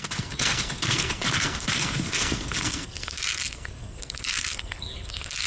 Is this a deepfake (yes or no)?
yes